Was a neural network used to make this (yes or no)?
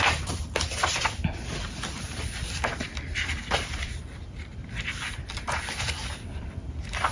yes